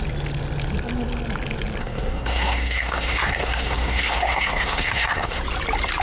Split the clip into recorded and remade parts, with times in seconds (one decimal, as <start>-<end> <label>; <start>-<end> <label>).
0.0-1.8 recorded; 1.8-5.4 remade; 5.4-6.0 recorded